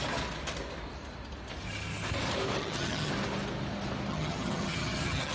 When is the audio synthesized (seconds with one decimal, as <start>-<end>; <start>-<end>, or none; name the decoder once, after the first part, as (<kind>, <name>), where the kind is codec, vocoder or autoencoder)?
2.6-3.1 (vocoder, HiFi-GAN); 4.1-5.3